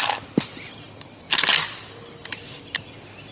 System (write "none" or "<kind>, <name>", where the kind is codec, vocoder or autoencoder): none